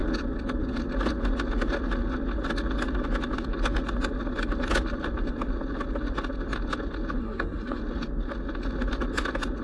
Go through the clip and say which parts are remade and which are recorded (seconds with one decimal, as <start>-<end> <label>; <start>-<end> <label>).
0.0-7.2 recorded; 7.2-7.8 remade; 7.8-9.6 recorded